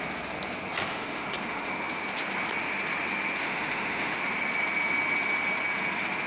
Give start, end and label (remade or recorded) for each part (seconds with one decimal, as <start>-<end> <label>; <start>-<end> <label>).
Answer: 0.0-0.9 recorded; 0.9-1.7 remade; 1.7-3.4 recorded; 3.4-4.2 remade; 4.2-6.3 recorded